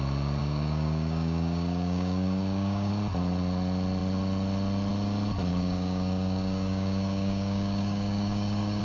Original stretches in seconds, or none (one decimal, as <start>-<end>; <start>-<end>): 0.0-0.4; 2.9-5.5